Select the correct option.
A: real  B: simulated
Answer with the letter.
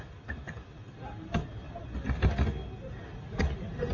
A